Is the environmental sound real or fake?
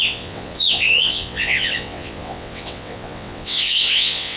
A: fake